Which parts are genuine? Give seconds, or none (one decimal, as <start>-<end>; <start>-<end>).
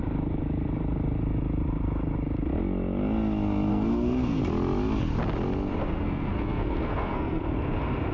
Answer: 0.0-3.7; 4.4-5.8; 7.4-8.1